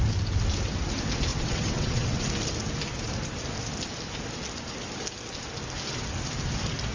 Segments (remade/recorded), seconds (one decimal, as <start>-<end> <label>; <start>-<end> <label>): 0.0-1.3 recorded; 1.3-2.2 remade; 2.2-6.9 recorded